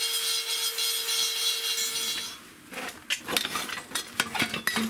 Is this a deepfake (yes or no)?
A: no